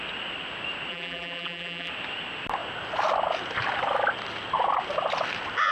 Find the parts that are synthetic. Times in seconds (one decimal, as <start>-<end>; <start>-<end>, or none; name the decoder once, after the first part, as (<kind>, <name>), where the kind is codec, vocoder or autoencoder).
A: 0.9-1.9 (vocoder, BigVGAN v2)